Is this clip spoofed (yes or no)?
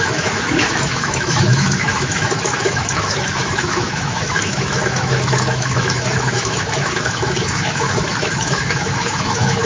yes